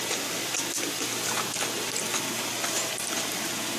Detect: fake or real real